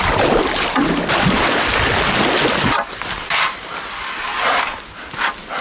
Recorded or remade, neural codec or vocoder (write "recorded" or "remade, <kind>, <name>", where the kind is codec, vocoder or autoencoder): recorded